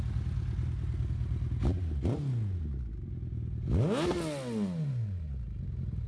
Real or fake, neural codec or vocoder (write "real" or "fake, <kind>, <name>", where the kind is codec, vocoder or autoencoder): real